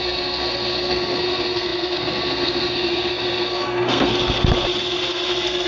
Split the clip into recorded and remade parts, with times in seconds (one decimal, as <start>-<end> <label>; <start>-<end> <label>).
0.0-4.1 remade; 4.1-4.8 recorded; 4.8-5.7 remade